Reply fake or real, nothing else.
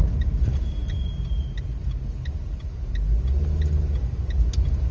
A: real